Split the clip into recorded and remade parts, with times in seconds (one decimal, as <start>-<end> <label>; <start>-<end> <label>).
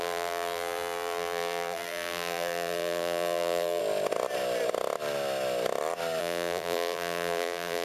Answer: 0.0-3.8 remade; 3.8-6.2 recorded; 6.2-7.8 remade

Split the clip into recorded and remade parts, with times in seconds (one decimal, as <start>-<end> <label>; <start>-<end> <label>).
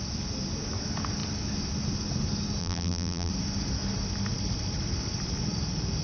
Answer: 0.0-2.6 recorded; 2.6-3.3 remade; 3.3-6.0 recorded